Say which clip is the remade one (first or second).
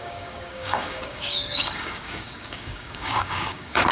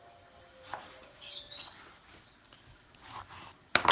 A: first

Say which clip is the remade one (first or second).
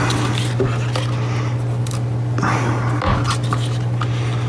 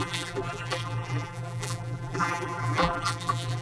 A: second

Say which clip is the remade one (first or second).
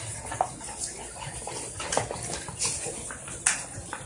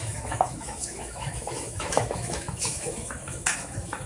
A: second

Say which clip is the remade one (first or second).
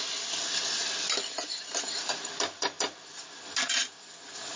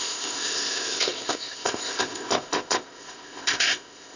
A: second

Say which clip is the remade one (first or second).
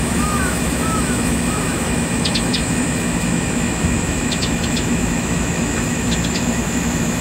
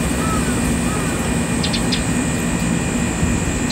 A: first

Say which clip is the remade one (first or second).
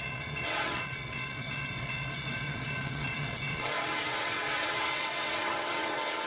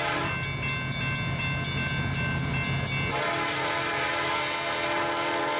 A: first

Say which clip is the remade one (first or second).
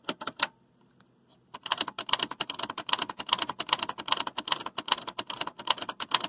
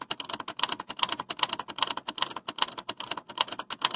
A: first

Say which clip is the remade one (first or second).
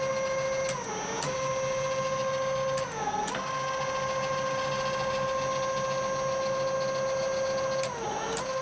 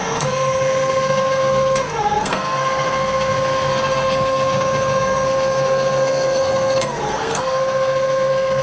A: second